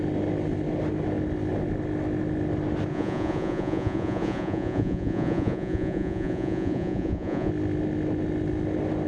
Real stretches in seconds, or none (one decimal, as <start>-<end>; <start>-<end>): 0.0-2.9; 7.5-9.1